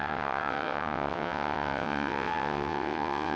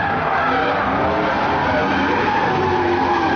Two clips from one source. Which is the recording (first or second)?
second